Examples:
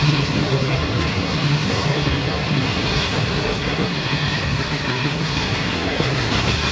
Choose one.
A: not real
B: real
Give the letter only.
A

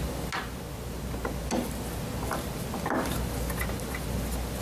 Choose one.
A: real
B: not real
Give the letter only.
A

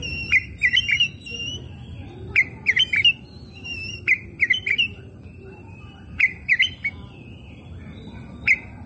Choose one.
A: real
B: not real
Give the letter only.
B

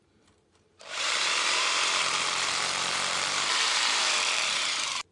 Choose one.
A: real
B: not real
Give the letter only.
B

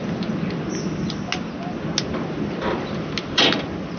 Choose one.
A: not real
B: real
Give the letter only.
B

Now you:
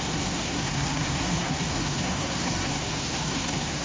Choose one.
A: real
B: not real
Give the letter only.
B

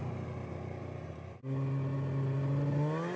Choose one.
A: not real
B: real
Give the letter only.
B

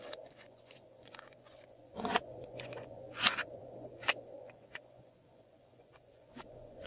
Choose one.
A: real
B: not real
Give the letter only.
B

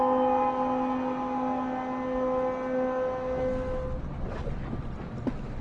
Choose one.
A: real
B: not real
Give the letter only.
A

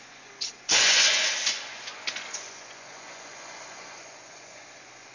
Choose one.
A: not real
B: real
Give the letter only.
A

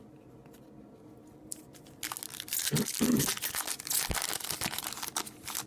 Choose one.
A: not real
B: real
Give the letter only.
B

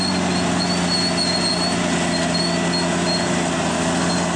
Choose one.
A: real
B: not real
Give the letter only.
A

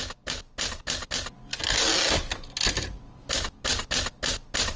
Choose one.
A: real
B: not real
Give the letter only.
A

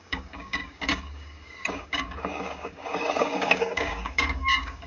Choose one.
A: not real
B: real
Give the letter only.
A